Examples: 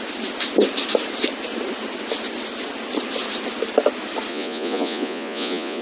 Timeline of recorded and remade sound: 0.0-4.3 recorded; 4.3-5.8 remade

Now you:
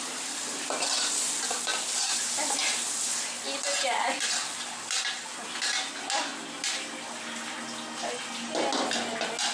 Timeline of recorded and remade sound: 0.0-9.5 recorded

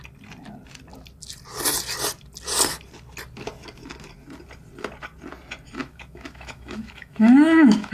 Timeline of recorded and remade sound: 0.0-5.8 recorded; 5.8-7.9 remade

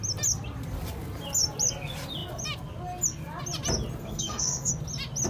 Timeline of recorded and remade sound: 0.0-4.0 recorded; 4.0-4.7 remade; 4.7-5.3 recorded

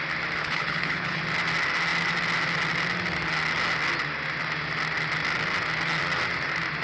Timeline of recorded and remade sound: 0.0-0.4 recorded; 0.4-1.2 remade; 1.2-6.8 recorded

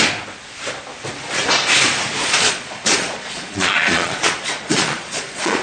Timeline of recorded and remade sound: 0.0-2.2 recorded; 2.2-5.6 remade

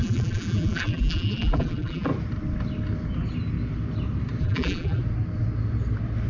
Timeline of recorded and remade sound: 0.0-2.1 remade; 2.1-4.4 recorded; 4.4-5.0 remade; 5.0-6.3 recorded

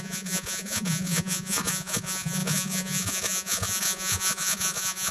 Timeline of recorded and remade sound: 0.0-5.1 remade